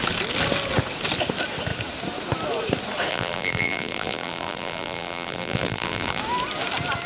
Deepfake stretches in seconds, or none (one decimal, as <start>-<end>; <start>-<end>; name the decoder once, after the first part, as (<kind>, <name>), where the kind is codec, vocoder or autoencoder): 3.1-6.2 (vocoder, BigVGAN v2)

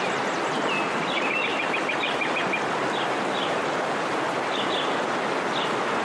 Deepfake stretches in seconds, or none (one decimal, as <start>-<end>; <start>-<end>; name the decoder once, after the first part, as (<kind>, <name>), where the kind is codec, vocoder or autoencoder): none

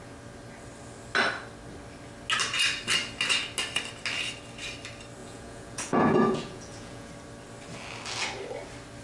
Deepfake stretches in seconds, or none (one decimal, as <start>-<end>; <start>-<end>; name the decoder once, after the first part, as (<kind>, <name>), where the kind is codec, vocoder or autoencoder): 5.2-7.1 (vocoder, Vocos)

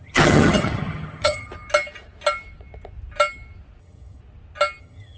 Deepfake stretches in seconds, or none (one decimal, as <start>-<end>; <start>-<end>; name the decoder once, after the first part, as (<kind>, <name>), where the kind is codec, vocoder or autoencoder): 0.0-1.5 (vocoder, HiFi-GAN); 3.8-4.2; 4.8-5.2

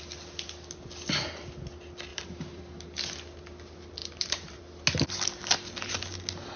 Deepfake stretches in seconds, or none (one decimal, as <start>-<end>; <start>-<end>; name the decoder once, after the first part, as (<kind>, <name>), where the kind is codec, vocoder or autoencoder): 2.1-2.6 (vocoder, BigVGAN v2); 4.0-4.6

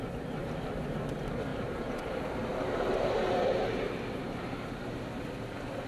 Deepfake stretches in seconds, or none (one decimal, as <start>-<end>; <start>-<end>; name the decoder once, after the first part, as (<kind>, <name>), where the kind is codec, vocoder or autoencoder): 0.4-0.9 (vocoder, BigVGAN v2); 1.5-5.0

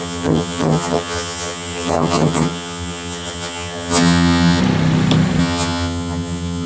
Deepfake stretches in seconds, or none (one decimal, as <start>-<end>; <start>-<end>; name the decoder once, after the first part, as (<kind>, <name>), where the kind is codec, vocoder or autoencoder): 0.0-4.6 (vocoder, HiFi-GAN); 5.4-6.7